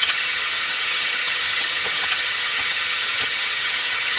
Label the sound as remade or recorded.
remade